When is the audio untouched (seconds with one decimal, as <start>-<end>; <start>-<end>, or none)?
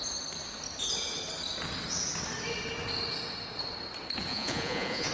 0.0-4.3